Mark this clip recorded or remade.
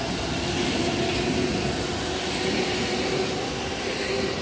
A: recorded